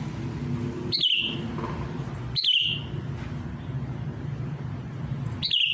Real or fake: real